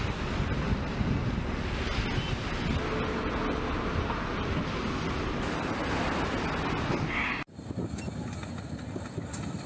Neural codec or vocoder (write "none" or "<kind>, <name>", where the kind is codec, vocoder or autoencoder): none